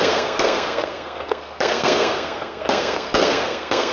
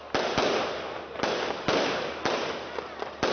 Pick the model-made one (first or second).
first